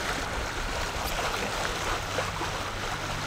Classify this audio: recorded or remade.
recorded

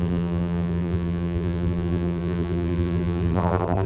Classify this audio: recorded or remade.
remade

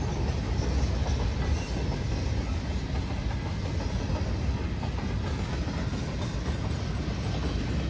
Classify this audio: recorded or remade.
recorded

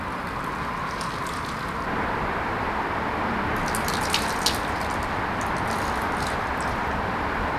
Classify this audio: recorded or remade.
recorded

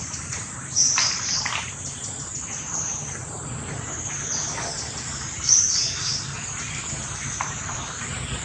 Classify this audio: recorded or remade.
remade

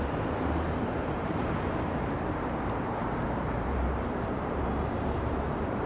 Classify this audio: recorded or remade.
remade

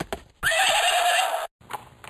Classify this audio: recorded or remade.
recorded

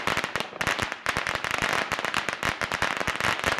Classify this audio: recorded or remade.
recorded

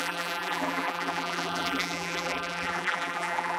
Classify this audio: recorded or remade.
remade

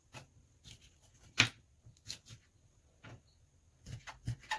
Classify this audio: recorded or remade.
recorded